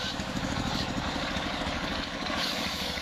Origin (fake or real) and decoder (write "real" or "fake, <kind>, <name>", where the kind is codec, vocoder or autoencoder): fake, codec, DAC